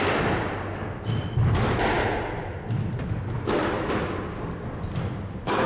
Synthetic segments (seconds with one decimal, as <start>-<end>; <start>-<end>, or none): none